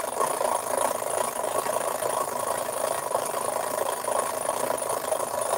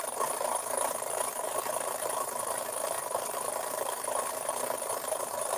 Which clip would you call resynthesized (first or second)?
second